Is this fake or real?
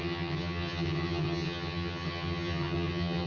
fake